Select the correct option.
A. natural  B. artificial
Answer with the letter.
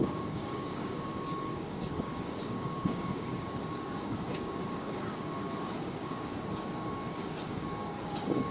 B